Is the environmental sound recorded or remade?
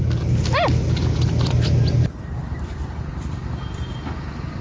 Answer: recorded